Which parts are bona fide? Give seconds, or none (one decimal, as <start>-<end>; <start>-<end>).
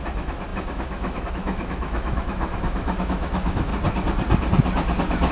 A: 3.7-5.3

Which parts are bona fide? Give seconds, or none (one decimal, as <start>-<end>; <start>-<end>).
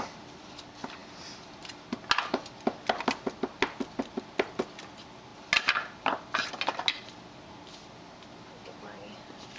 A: 0.0-9.6